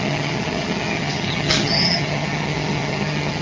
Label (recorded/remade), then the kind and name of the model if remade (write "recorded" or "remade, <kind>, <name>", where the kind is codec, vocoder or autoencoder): remade, vocoder, HiFi-GAN